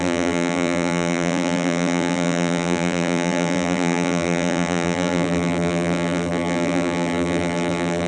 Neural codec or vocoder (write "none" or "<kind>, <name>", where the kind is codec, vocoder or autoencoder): vocoder, BigVGAN v2